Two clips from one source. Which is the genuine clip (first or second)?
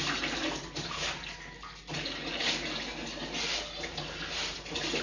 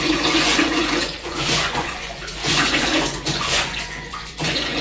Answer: first